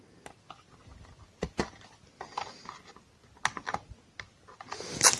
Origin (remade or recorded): recorded